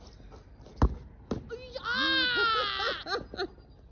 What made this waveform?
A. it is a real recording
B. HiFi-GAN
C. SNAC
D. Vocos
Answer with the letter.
A